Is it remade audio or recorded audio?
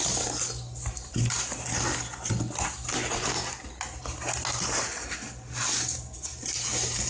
recorded